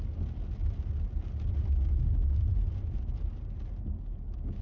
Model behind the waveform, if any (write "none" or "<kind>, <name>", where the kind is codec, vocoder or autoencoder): none